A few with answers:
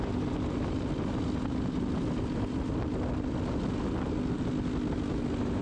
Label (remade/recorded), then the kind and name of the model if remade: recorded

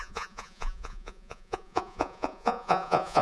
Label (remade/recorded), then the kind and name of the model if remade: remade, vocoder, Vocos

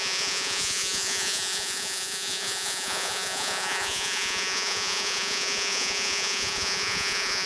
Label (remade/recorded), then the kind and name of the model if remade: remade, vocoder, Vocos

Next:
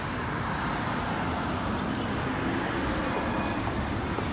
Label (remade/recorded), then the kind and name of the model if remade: recorded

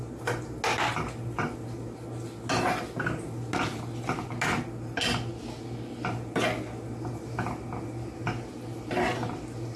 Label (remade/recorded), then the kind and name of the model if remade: recorded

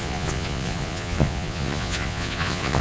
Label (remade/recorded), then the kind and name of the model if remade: remade, vocoder, Vocos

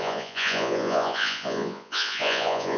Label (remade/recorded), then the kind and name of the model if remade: remade, vocoder, Vocos